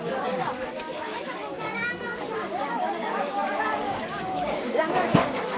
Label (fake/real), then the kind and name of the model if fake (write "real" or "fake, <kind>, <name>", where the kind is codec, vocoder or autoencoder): fake, codec, DAC